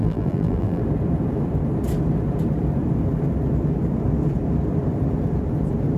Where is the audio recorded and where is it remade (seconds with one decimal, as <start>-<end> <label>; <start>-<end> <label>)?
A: 0.0-0.8 remade; 0.8-6.0 recorded